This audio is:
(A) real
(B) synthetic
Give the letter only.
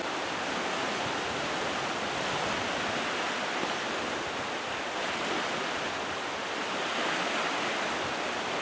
A